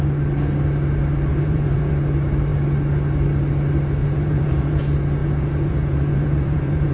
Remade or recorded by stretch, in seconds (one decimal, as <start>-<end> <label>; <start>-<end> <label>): 0.0-1.3 recorded; 1.3-1.9 remade; 1.9-4.0 recorded; 4.0-4.8 remade; 4.8-5.2 recorded; 5.2-6.9 remade

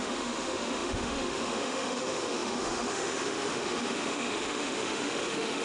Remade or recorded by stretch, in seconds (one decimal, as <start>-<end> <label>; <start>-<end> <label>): 0.0-5.6 remade

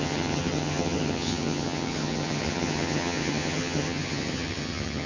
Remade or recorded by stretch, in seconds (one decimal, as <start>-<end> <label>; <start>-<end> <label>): 0.0-5.1 remade

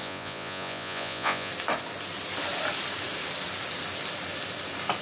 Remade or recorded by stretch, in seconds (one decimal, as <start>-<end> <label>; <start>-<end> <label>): 0.0-1.5 remade; 1.5-5.0 recorded

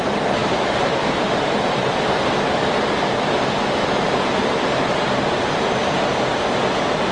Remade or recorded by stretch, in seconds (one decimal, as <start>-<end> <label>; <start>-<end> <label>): 0.0-0.4 recorded; 0.4-2.0 remade; 2.0-7.1 recorded

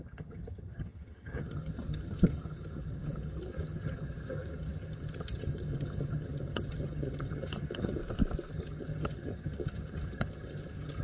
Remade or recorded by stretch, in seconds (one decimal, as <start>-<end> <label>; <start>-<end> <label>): 0.0-8.0 remade; 8.0-8.5 recorded; 8.5-11.0 remade